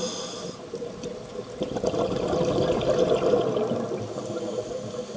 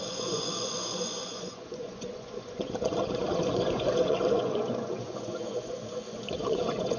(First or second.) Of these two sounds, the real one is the first